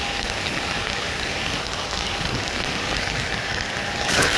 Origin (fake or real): fake